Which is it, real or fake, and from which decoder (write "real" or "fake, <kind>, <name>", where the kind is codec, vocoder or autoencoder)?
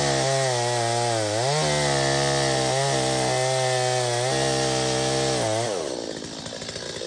real